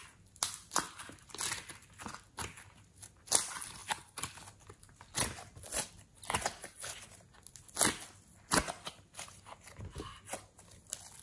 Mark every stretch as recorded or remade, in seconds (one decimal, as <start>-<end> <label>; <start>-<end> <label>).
0.0-11.2 recorded